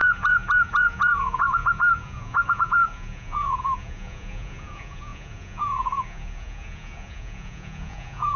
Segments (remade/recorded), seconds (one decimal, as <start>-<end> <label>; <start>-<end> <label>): 0.0-8.4 remade